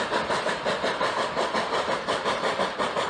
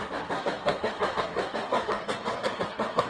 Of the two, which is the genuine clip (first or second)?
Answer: first